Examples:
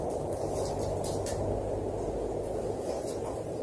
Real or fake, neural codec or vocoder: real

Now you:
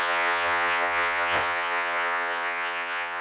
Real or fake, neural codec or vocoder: fake, vocoder, Vocos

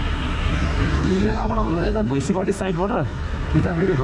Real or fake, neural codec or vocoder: fake, codec, SNAC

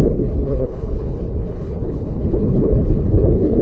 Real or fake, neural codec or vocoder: fake, codec, HILCodec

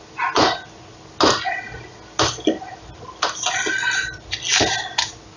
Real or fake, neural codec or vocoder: real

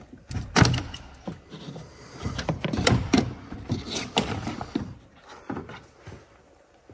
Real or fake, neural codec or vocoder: fake, vocoder, BigVGAN v2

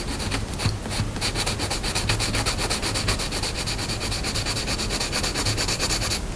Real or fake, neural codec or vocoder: real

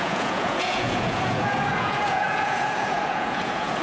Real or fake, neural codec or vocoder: fake, vocoder, Vocos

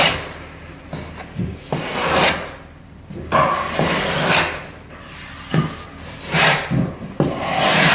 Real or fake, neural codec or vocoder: real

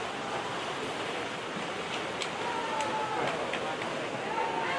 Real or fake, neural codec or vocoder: real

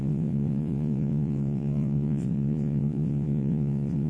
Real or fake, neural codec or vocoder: fake, vocoder, WaveNeXt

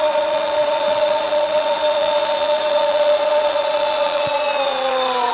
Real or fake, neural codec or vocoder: fake, vocoder, Vocos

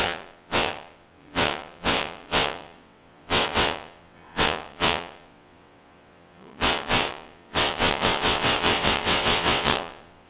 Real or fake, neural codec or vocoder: fake, vocoder, WaveNeXt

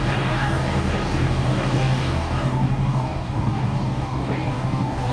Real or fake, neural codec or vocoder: fake, codec, DAC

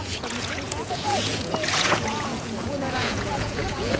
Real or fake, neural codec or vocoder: fake, vocoder, Vocos